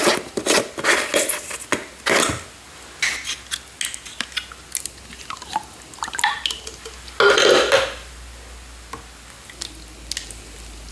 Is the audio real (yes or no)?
yes